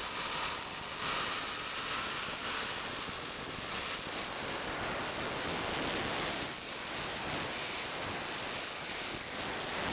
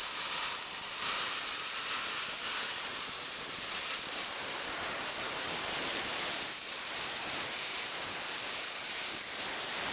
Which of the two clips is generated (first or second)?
second